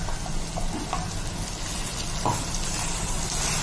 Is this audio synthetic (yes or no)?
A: no